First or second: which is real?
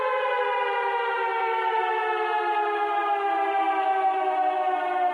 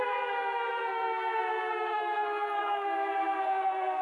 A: first